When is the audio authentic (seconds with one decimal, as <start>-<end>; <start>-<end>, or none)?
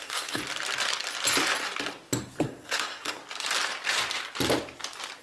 0.4-2.4; 3.2-5.2